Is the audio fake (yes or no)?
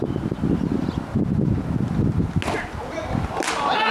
no